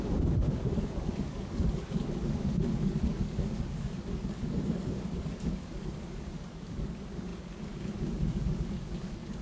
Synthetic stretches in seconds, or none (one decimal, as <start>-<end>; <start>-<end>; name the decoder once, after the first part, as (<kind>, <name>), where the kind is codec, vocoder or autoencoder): 0.0-9.4 (codec, DAC)